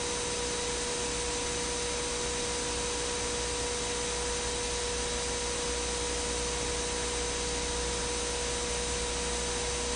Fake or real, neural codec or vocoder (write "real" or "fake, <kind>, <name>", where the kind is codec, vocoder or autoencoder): real